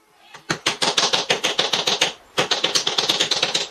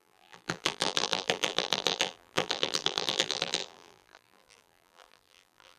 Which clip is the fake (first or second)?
second